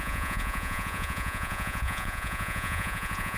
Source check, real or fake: fake